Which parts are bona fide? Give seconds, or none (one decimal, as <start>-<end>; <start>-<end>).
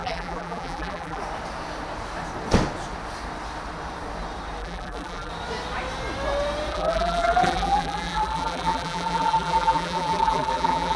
1.2-4.6; 5.3-6.7